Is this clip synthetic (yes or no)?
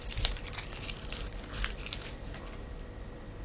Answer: no